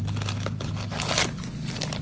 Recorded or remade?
recorded